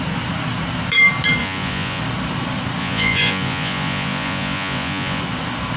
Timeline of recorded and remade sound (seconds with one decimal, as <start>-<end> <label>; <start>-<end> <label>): 0.0-1.4 recorded; 1.4-2.0 remade; 2.0-2.8 recorded; 2.8-5.2 remade; 5.2-5.8 recorded